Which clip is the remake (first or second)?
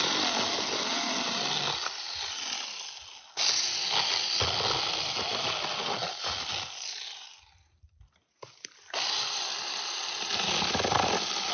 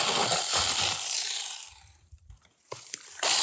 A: second